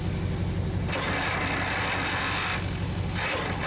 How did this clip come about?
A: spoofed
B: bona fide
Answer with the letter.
B